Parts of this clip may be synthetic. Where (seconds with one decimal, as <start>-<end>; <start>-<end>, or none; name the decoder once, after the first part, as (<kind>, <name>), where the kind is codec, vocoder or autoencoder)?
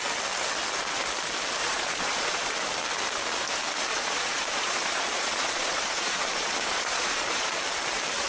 1.6-2.5 (vocoder, Vocos); 3.9-7.5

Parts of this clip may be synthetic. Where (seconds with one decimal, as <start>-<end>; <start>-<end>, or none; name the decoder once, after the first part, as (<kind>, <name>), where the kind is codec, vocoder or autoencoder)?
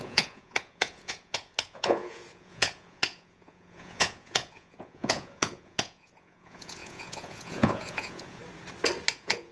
0.0-8.4 (vocoder, Vocos); 9.1-9.5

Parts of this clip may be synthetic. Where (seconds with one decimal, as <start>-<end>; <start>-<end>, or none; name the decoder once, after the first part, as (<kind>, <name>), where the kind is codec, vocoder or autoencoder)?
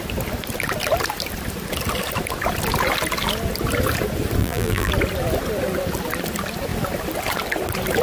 4.4-4.9 (vocoder, BigVGAN v2)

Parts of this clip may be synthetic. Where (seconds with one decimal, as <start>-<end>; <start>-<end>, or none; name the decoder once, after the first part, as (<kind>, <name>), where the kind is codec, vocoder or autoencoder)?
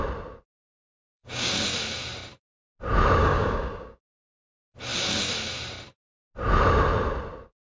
0.5-1.5 (codec, DAC); 3.2-4.2